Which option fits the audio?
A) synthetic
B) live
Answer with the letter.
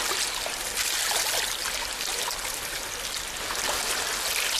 B